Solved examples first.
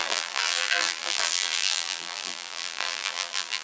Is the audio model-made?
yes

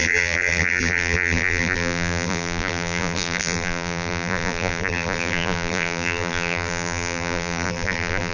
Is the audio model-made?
yes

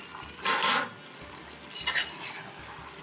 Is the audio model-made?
no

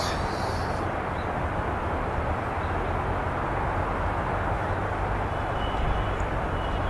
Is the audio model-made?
no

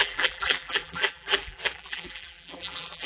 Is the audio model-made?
yes